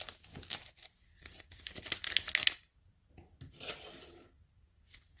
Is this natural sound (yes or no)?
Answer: yes